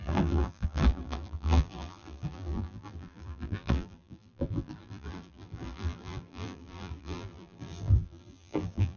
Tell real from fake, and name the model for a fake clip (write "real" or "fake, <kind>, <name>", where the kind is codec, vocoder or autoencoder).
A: fake, vocoder, BigVGAN v2